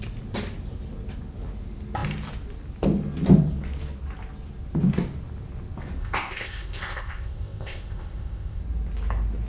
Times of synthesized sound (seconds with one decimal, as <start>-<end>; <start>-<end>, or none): 6.0-8.6